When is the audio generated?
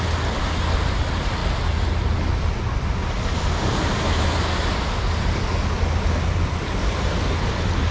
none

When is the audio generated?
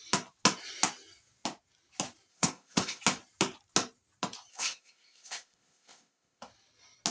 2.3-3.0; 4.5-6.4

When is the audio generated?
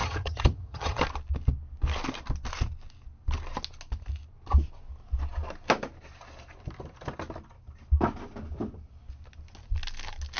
0.0-1.0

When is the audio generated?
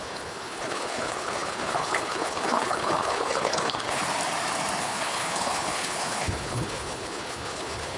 0.0-4.0; 4.8-8.0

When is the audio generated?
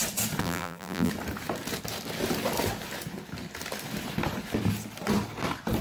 0.4-1.1